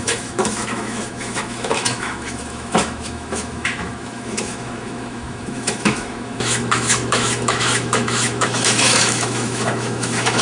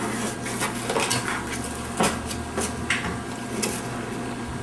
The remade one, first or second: first